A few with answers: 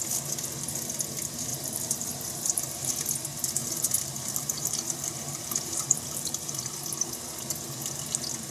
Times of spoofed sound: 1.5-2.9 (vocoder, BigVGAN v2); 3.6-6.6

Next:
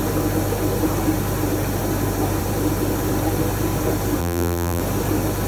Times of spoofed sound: 4.2-4.8 (vocoder, BigVGAN v2)

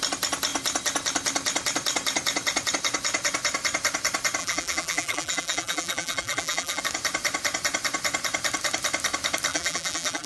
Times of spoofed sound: 4.4-6.8 (vocoder, BigVGAN v2); 9.5-10.3

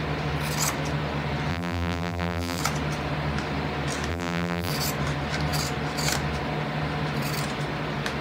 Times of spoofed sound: 1.5-2.6 (vocoder, BigVGAN v2); 4.1-4.7

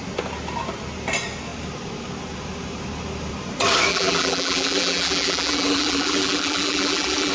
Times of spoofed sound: 3.9-7.3 (vocoder, BigVGAN v2)

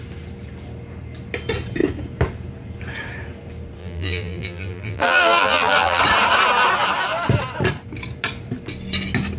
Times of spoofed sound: 3.8-6.0 (vocoder, BigVGAN v2)

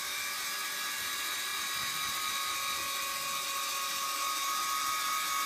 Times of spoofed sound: none